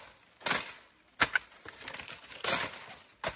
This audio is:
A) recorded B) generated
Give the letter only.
A